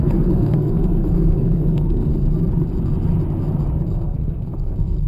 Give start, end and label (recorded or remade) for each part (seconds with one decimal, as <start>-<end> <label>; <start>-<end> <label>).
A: 0.0-2.1 remade; 2.1-3.9 recorded; 3.9-5.1 remade